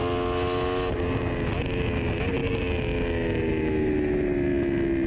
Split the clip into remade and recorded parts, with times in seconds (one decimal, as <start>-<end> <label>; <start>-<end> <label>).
0.0-5.1 recorded